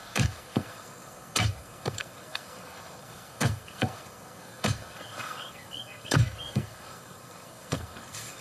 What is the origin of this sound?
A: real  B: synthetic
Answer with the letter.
B